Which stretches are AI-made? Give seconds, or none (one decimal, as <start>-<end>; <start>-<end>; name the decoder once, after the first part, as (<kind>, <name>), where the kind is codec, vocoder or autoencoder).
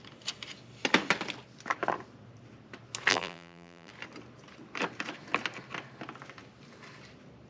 3.1-3.9 (vocoder, BigVGAN v2)